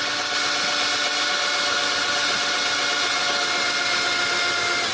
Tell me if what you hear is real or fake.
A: real